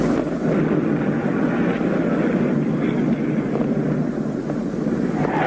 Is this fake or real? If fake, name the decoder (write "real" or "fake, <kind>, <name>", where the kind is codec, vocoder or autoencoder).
real